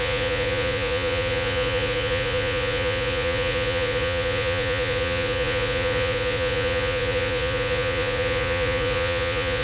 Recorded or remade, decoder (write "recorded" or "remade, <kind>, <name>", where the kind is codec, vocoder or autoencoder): remade, vocoder, Vocos